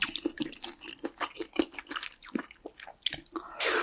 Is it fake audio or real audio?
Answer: real